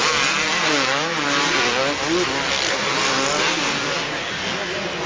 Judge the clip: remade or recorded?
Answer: recorded